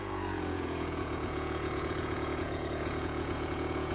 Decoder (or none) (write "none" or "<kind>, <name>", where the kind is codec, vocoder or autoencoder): vocoder, Vocos